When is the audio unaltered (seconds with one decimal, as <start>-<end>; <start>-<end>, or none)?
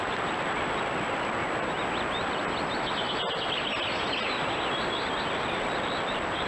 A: 1.4-5.3